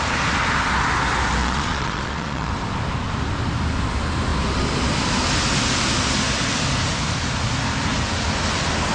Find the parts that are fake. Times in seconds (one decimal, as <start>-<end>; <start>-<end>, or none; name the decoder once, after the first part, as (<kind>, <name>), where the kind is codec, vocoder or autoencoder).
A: 1.4-2.5 (vocoder, Vocos)

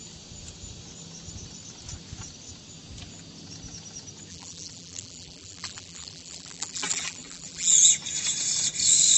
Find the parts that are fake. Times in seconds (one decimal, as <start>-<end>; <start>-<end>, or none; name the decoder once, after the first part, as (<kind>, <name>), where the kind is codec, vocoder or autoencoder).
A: 4.3-7.9 (vocoder, BigVGAN v2)

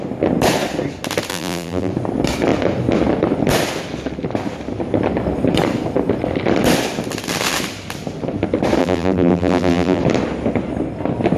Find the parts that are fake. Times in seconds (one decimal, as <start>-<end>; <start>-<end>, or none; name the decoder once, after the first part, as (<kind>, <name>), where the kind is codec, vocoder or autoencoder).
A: 1.3-1.9 (vocoder, BigVGAN v2); 8.8-10.0

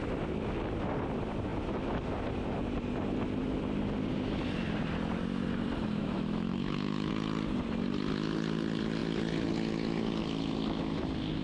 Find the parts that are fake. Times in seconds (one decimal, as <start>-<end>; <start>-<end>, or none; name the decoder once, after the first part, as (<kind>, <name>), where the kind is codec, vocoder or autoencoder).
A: 6.0-7.1 (autoencoder, DAC-VAE)

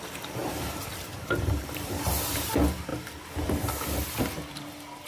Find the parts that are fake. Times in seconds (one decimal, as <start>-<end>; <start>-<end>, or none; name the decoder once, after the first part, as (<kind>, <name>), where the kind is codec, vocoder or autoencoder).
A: 0.4-2.1 (vocoder, BigVGAN v2)

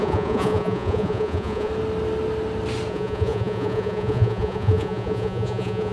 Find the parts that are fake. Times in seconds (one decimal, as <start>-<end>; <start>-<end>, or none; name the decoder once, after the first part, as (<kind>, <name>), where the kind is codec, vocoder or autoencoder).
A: 0.0-1.7 (vocoder, Vocos); 2.9-5.9

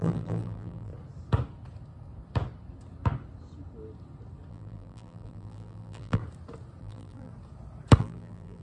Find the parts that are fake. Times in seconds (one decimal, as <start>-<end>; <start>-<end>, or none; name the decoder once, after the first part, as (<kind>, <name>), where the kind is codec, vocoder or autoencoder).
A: 0.0-0.9 (vocoder, BigVGAN v2); 4.5-6.2; 6.8-7.3; 8.0-8.6

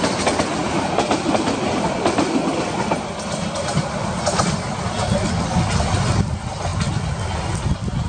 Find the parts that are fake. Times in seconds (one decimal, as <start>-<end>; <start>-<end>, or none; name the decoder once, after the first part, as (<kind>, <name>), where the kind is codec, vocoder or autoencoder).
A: none